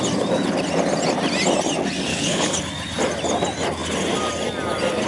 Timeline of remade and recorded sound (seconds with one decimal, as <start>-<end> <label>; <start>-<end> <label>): 0.0-2.1 recorded; 2.1-2.6 remade; 2.6-5.1 recorded